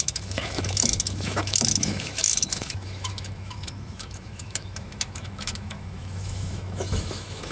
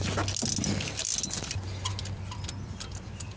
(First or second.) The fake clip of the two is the first